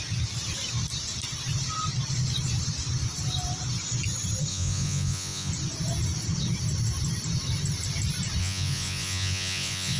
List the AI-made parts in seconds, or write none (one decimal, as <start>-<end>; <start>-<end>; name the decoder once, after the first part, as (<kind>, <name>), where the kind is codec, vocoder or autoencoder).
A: 4.5-5.5 (vocoder, Vocos); 8.4-10.0